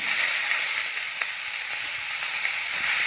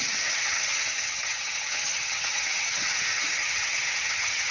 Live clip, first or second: first